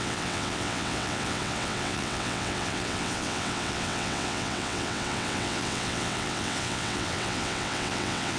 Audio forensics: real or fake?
fake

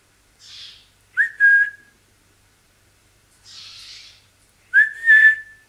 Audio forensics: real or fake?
real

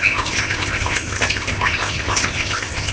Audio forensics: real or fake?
fake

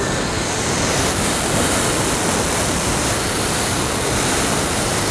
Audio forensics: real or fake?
real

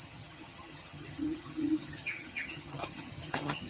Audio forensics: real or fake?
fake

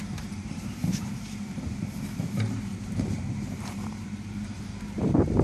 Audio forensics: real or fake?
fake